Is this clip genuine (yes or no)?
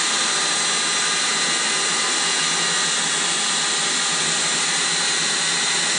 yes